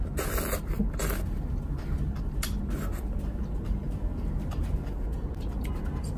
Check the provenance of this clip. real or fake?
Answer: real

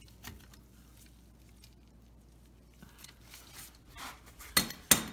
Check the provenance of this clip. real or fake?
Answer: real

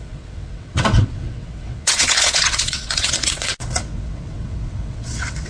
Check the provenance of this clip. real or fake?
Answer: fake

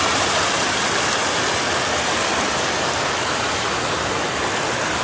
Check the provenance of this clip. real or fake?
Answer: real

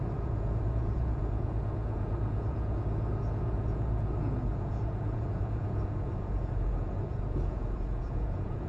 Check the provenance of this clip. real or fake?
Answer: fake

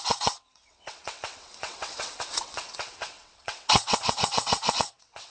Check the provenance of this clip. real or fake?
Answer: fake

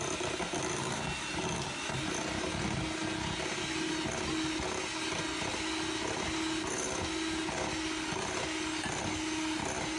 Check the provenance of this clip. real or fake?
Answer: real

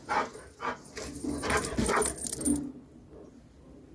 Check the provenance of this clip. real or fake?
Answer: real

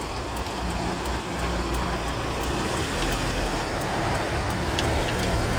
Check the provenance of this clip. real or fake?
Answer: real